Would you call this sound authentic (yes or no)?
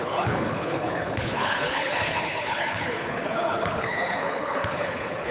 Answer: no